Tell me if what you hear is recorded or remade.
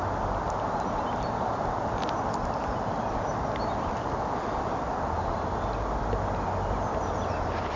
recorded